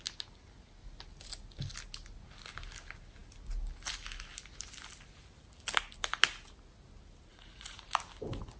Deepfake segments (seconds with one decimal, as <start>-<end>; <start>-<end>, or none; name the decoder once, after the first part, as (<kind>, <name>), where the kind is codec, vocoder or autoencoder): 7.3-7.8 (vocoder, Vocos)